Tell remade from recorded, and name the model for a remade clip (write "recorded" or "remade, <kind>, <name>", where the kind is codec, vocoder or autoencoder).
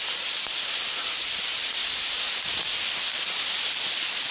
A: remade, vocoder, BigVGAN v2